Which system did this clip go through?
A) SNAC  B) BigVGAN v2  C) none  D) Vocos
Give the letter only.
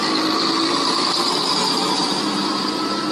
C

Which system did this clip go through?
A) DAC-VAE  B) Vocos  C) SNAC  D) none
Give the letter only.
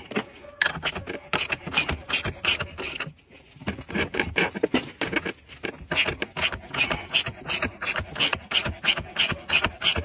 D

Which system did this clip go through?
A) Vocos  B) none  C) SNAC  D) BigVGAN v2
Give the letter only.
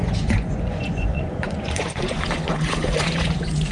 A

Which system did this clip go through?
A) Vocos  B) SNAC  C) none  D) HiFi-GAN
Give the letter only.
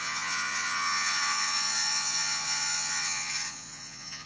A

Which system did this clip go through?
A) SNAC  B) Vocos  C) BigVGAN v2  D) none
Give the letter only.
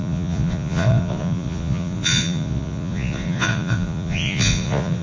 B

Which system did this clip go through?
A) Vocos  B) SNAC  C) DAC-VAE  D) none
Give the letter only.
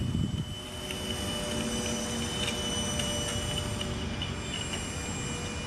D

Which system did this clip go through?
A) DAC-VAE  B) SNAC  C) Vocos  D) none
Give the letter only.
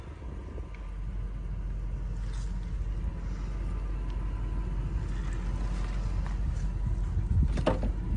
D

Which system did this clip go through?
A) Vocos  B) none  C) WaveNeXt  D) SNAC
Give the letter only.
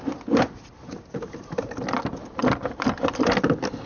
B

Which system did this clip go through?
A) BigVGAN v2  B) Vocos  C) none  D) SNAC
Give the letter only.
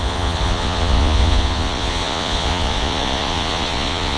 B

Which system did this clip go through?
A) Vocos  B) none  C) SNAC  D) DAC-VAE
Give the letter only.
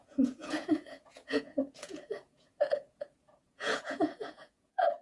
A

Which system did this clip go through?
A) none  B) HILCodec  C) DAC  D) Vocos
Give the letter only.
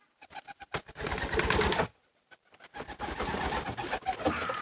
A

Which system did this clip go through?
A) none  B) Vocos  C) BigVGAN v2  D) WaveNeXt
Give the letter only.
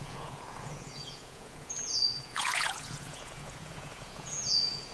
B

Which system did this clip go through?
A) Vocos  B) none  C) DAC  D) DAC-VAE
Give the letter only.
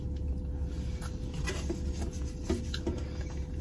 B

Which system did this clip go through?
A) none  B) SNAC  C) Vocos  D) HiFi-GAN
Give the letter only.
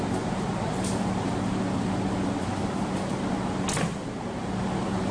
A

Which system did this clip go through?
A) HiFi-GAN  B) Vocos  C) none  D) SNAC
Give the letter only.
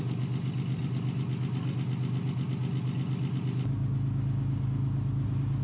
C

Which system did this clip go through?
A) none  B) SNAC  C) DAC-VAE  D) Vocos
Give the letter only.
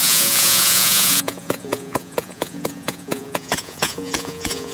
D